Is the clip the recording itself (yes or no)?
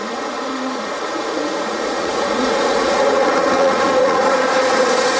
no